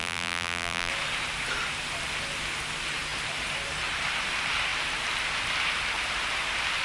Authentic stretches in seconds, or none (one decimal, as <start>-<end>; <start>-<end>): 0.9-6.8